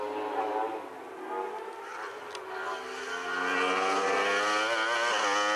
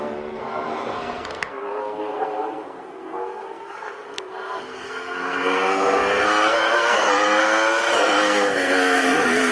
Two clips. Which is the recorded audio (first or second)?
first